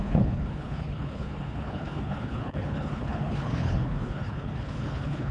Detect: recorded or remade remade